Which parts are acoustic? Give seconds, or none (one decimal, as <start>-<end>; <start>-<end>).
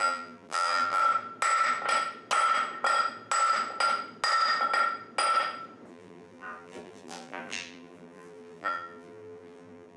1.0-5.9